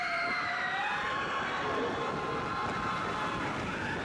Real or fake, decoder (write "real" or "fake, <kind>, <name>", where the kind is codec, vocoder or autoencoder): real